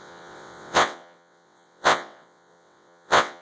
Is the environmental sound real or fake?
fake